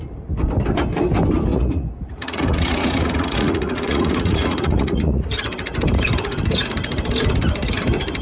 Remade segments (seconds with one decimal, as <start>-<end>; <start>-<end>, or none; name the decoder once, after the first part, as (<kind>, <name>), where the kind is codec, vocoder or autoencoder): 1.5-5.3 (vocoder, Vocos)